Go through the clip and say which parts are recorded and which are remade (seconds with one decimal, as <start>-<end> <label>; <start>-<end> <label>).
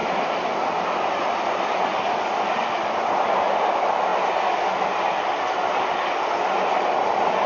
0.0-7.5 recorded